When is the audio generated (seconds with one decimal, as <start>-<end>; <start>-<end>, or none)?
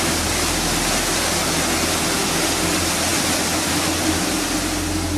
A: none